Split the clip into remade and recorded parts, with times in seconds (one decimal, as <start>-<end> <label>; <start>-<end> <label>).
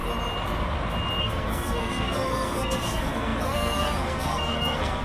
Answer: 0.0-1.2 recorded; 1.2-5.0 remade